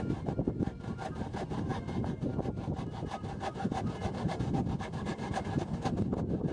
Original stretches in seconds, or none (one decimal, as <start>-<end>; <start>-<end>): 0.0-6.5